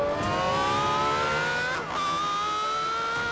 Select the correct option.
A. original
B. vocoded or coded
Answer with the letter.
A